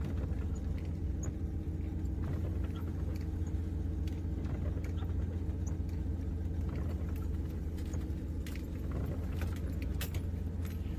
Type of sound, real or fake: real